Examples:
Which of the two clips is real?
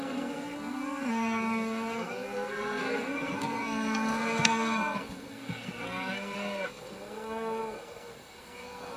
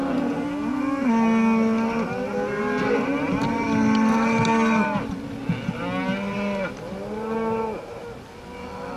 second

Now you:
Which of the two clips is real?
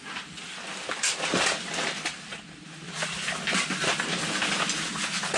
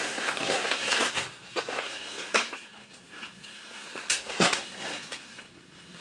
first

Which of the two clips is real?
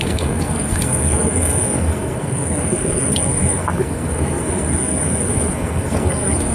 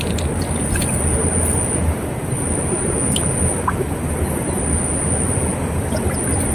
second